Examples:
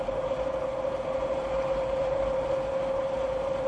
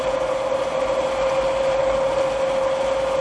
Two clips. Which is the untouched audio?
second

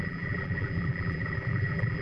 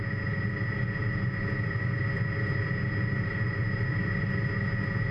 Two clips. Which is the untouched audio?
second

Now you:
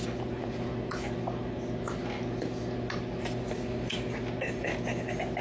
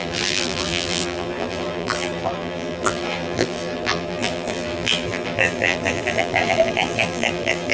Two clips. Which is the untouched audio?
first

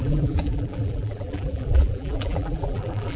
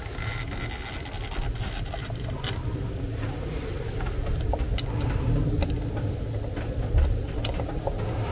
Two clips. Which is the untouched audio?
second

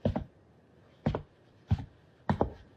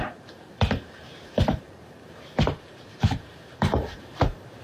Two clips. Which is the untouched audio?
first